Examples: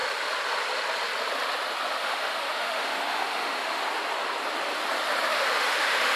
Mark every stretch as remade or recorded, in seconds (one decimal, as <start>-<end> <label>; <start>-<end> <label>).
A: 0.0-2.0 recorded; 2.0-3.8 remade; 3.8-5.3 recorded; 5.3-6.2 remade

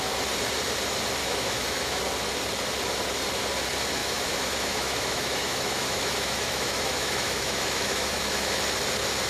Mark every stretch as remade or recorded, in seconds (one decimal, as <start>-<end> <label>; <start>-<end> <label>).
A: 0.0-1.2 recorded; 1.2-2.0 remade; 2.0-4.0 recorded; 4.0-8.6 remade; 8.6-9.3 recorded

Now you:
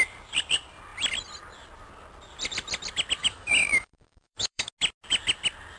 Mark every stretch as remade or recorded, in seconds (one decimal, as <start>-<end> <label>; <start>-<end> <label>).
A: 0.0-3.2 recorded; 3.2-4.7 remade; 4.7-5.8 recorded

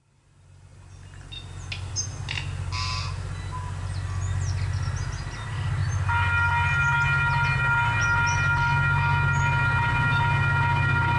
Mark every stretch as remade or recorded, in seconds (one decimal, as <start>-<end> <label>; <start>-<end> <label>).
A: 0.0-11.2 recorded

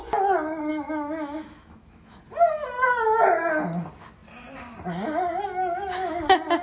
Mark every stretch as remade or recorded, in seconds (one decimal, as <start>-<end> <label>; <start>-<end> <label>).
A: 0.0-0.7 recorded; 0.7-2.2 remade; 2.2-6.6 recorded

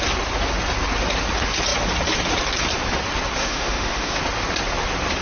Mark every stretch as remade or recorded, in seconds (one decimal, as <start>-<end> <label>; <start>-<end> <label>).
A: 0.0-3.4 recorded; 3.4-4.2 remade; 4.2-5.2 recorded